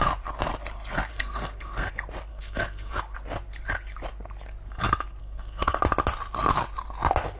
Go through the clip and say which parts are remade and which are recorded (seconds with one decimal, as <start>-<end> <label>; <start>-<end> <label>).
0.0-1.1 recorded; 1.1-1.9 remade; 1.9-2.3 recorded; 2.3-3.0 remade; 3.0-5.2 recorded; 5.2-5.8 remade; 5.8-7.4 recorded